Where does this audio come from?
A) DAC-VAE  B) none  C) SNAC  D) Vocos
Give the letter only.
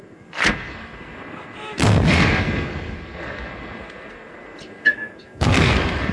C